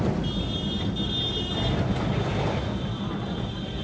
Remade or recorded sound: recorded